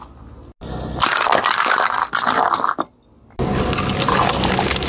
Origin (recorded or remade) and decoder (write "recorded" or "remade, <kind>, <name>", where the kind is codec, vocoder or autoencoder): recorded